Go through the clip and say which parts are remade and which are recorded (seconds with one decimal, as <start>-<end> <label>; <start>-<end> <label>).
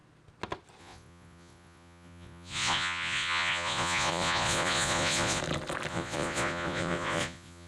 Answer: 0.0-0.8 recorded; 0.8-5.4 remade; 5.4-5.9 recorded; 5.9-7.7 remade